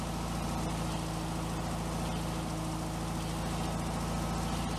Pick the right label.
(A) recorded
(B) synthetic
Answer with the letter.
A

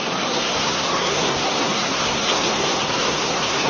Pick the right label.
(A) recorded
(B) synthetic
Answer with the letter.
B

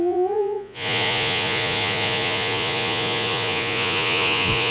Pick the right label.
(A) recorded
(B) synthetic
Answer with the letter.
B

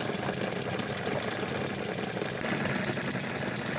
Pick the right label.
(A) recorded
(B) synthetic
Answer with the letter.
A